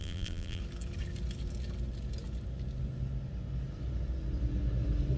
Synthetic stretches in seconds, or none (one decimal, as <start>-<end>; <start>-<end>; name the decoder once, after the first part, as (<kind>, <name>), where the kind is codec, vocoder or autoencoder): 0.0-0.6 (vocoder, BigVGAN v2)